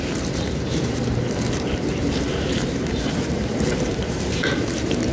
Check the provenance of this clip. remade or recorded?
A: remade